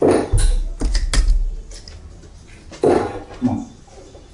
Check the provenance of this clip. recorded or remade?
recorded